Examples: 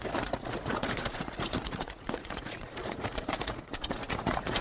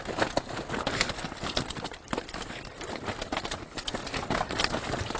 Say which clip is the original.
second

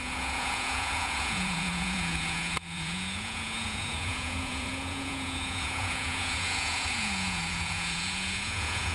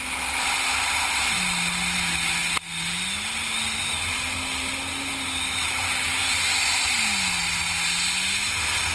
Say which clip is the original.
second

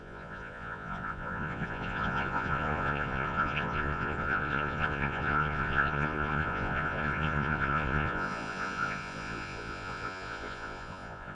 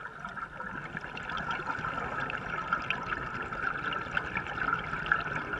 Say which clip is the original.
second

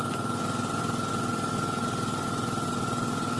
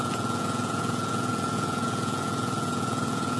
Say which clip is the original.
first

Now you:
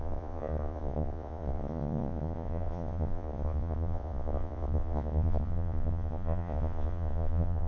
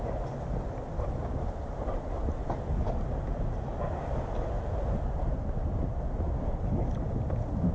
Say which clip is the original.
second